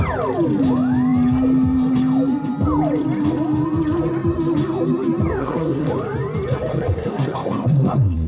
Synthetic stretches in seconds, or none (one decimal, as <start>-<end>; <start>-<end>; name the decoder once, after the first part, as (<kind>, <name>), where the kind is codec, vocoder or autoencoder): 5.4-5.9 (codec, SNAC); 6.7-8.3